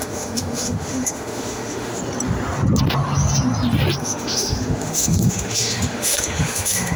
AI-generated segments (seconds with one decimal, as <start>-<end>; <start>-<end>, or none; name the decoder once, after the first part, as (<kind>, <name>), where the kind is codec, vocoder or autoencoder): 0.0-2.0 (autoencoder, DAC-VAE); 4.0-7.0